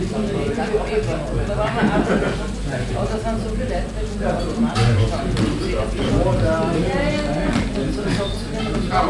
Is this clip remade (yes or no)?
no